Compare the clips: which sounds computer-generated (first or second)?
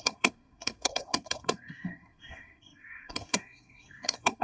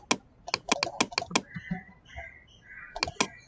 first